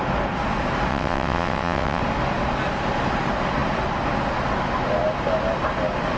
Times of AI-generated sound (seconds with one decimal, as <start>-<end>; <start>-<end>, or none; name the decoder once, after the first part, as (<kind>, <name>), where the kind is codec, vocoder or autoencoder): 0.9-2.0 (vocoder, WaveNeXt)